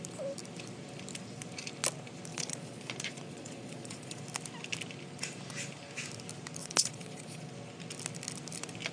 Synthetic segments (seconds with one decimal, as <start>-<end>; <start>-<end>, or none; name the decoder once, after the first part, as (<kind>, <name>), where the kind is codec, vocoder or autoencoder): 2.3-4.2 (vocoder, Vocos); 6.6-7.5